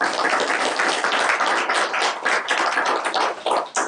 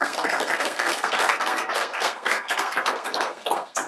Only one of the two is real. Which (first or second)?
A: first